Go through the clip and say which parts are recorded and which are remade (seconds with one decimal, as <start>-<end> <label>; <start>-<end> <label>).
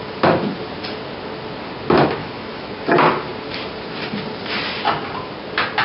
0.0-2.2 recorded; 2.2-2.7 remade; 2.7-5.8 recorded